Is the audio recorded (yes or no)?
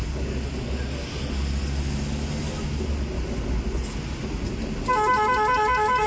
yes